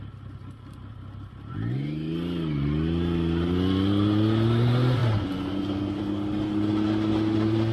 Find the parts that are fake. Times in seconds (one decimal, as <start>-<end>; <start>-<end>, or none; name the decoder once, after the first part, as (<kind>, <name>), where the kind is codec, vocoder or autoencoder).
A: none